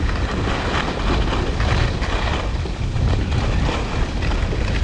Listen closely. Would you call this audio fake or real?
real